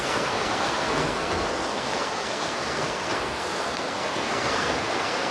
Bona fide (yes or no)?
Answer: no